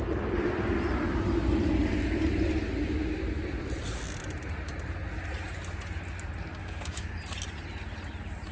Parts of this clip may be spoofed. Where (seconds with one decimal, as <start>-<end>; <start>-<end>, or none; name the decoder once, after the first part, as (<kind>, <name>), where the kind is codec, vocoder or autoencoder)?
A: 6.6-7.2 (codec, DAC)